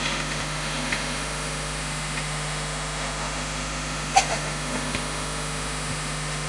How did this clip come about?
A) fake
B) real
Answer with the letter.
A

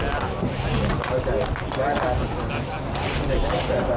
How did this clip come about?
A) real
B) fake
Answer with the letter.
A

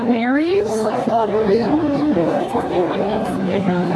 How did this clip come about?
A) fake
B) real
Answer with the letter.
A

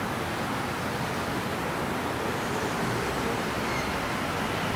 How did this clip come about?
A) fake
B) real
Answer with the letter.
B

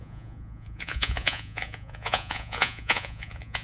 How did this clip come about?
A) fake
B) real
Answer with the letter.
A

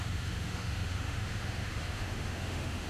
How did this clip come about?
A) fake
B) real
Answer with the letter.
A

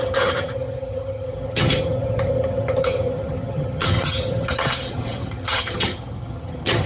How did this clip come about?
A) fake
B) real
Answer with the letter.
A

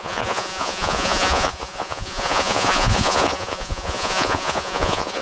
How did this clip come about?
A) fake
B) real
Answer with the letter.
A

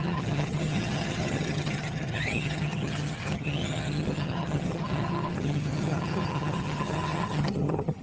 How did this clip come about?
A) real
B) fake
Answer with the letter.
B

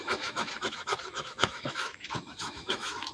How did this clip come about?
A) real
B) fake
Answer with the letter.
B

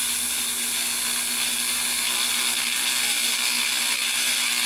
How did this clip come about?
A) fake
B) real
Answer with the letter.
B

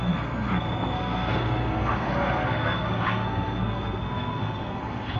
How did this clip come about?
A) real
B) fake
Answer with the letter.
B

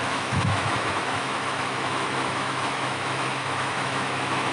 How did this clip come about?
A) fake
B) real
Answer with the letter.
A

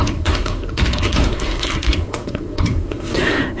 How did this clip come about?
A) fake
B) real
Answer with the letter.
A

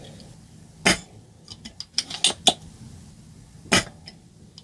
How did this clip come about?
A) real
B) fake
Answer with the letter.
A